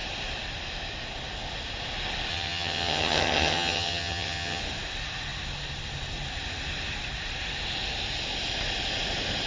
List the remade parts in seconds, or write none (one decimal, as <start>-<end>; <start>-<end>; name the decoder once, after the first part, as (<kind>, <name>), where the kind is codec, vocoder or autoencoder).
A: 2.3-4.6 (vocoder, HiFi-GAN)